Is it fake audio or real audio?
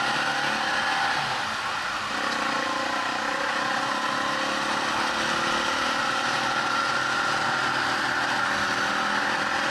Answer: real